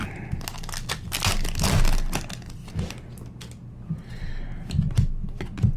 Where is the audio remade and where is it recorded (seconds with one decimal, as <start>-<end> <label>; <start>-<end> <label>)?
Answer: 0.0-5.8 recorded